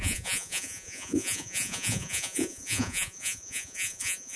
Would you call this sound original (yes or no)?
no